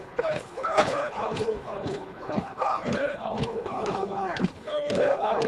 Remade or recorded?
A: remade